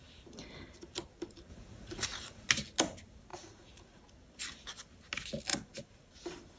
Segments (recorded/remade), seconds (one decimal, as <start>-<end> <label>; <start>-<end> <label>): 0.0-1.5 recorded; 1.5-2.5 remade; 2.5-3.3 recorded; 3.3-4.0 remade; 4.0-5.5 recorded; 5.5-6.1 remade; 6.1-6.6 recorded